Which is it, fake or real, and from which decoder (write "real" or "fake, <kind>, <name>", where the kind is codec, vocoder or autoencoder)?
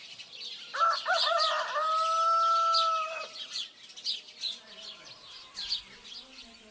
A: real